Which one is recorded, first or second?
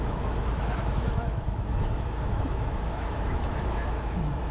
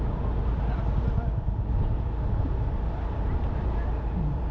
second